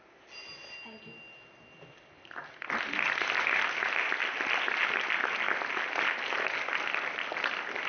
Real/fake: real